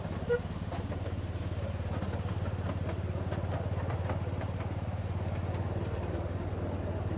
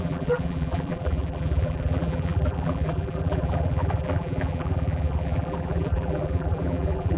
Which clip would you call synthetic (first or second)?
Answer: second